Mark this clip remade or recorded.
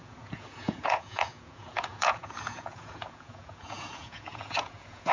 remade